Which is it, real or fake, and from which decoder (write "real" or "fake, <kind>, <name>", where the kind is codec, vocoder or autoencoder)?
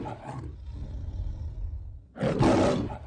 real